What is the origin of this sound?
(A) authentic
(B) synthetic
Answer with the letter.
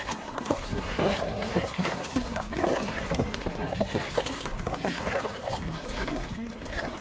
B